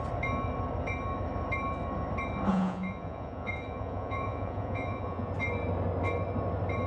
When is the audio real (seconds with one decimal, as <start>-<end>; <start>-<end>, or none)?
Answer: 0.0-2.5; 5.3-6.9